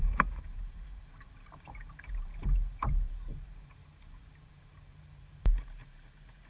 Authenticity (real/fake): fake